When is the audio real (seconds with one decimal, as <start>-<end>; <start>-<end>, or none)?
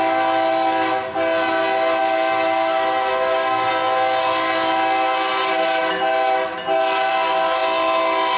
0.0-2.0; 3.7-8.4